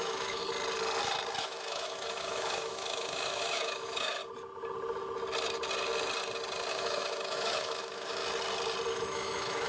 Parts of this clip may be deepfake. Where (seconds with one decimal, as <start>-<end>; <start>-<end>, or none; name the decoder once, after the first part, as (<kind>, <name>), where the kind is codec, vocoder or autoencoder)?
0.0-0.4 (autoencoder, DAC-VAE); 1.4-4.2; 6.7-8.2; 8.9-9.7